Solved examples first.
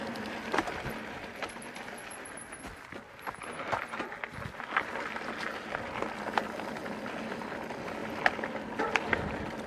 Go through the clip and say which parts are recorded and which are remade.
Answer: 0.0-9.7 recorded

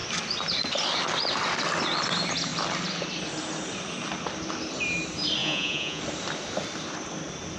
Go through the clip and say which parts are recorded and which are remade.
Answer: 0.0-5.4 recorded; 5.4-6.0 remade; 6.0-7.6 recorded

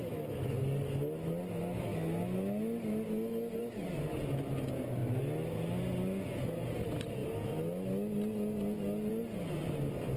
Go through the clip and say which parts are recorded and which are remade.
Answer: 0.0-10.2 recorded